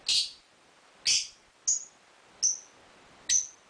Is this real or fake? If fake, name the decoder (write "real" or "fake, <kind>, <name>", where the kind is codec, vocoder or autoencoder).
real